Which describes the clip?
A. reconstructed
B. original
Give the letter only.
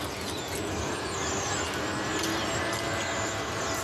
B